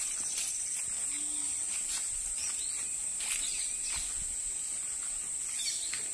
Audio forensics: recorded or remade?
recorded